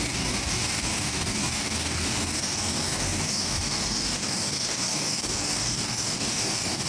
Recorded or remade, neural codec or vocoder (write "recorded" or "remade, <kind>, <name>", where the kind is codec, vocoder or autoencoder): remade, codec, DAC